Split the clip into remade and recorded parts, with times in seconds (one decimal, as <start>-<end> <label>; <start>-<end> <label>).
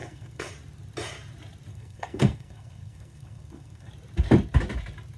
0.0-0.5 remade; 0.5-1.7 recorded; 1.7-3.9 remade; 3.9-5.2 recorded